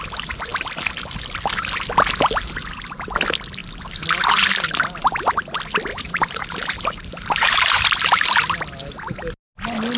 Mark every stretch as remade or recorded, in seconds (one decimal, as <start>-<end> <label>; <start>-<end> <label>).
0.0-5.9 recorded; 5.9-7.9 remade; 7.9-10.0 recorded